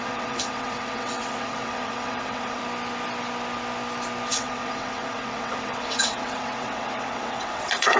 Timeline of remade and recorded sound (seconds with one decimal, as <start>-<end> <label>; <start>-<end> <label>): 0.0-2.6 remade; 2.6-4.3 recorded; 4.3-8.0 remade

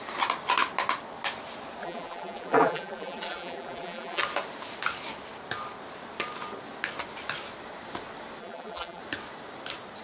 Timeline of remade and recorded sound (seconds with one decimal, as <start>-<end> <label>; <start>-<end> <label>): 0.0-1.8 recorded; 1.8-4.2 remade; 4.2-8.4 recorded; 8.4-9.0 remade; 9.0-10.0 recorded

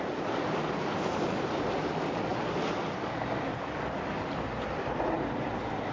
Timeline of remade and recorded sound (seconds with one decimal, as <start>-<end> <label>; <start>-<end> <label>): 0.0-2.3 recorded; 2.3-4.7 remade; 4.7-5.9 recorded

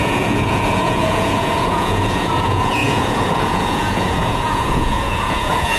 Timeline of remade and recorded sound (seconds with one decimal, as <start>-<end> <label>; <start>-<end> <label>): 0.0-5.8 remade

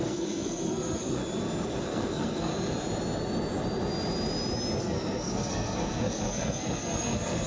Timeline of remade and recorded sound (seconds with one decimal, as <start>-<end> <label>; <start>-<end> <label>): 0.0-1.2 remade; 1.2-1.8 recorded; 1.8-2.5 remade; 2.5-4.8 recorded; 4.8-7.5 remade

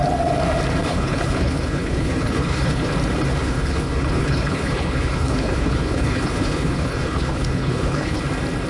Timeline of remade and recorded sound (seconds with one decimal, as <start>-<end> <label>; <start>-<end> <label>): 0.0-0.8 recorded; 0.8-2.9 remade; 2.9-3.4 recorded; 3.4-8.2 remade; 8.2-8.7 recorded